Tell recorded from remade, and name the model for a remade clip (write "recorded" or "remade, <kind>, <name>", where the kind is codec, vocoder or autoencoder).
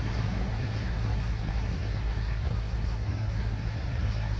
remade, codec, SNAC